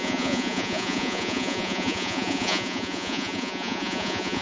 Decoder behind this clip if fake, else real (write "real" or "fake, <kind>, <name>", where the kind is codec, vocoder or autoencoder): fake, vocoder, Vocos